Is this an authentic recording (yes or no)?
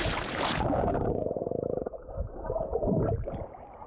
yes